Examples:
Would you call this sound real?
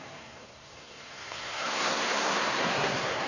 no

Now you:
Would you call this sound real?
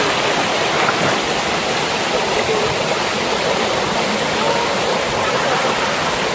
yes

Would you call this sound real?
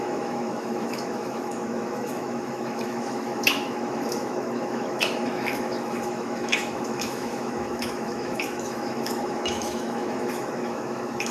no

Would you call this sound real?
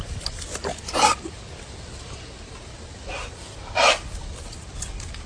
yes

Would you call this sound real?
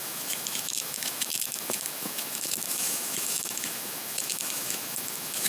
no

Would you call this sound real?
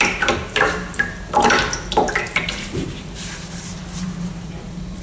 no